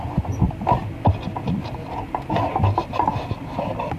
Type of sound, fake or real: real